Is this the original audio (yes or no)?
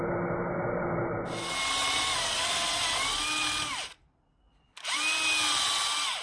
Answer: yes